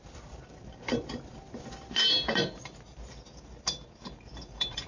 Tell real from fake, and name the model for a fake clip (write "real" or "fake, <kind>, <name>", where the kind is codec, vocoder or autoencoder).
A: fake, vocoder, BigVGAN v2